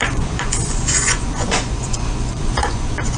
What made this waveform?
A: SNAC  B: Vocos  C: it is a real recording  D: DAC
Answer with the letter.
B